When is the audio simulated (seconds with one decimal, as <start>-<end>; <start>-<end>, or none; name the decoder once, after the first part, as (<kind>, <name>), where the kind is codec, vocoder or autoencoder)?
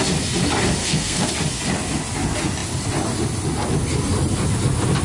0.8-1.3 (codec, SNAC)